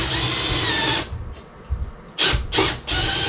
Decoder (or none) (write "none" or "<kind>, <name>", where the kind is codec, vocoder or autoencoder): none